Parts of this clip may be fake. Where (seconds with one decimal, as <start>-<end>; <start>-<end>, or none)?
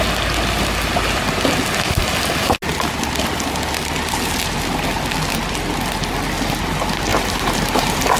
7.1-8.2